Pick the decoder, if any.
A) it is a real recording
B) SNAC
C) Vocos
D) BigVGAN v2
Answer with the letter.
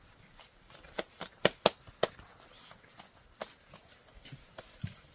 A